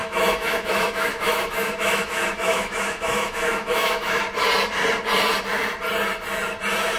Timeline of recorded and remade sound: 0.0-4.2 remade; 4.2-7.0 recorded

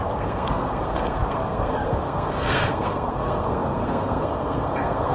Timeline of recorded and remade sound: 0.0-5.1 remade